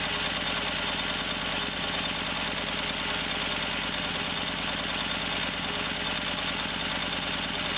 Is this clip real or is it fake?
real